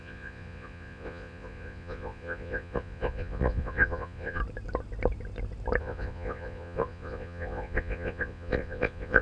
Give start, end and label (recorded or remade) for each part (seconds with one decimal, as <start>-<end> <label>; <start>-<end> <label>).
0.0-4.4 remade; 4.4-5.8 recorded; 5.8-9.2 remade